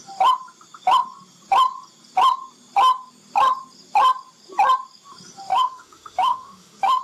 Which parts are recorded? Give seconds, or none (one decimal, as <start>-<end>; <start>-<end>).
0.0-5.5